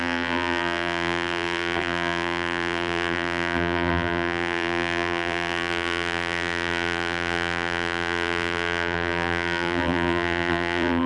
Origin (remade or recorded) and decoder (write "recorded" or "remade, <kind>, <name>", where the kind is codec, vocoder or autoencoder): remade, vocoder, BigVGAN v2